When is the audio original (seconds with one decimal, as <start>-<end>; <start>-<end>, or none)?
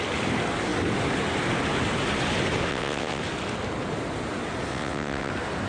0.0-2.7; 3.2-4.7; 5.3-5.7